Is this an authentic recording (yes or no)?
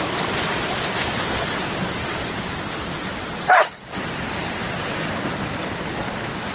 yes